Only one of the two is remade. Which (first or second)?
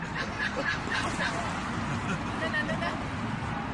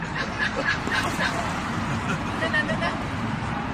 second